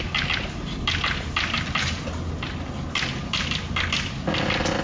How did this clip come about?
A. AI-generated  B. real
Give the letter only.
B